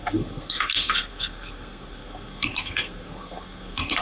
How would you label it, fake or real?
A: fake